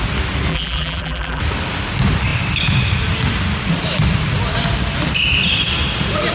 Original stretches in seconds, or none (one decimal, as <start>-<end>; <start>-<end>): 0.0-0.5; 1.4-6.3